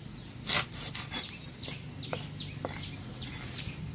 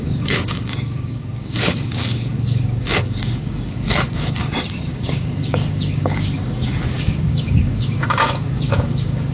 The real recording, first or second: first